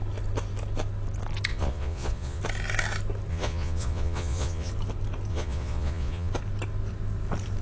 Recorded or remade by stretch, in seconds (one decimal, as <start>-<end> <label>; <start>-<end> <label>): 0.0-1.5 recorded; 1.5-2.4 remade; 2.4-3.3 recorded; 3.3-4.7 remade; 4.7-5.3 recorded; 5.3-6.3 remade; 6.3-7.6 recorded